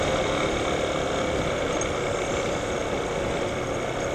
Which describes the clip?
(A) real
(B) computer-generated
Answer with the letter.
A